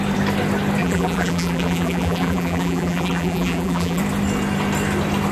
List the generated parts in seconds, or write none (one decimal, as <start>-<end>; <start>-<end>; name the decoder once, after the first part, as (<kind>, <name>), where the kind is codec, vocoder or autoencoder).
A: 0.8-4.0 (vocoder, BigVGAN v2)